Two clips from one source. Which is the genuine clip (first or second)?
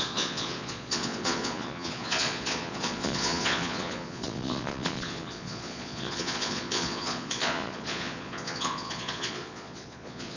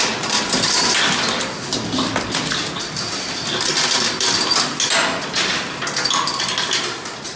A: second